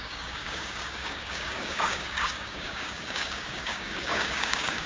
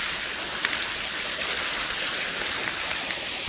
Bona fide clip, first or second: second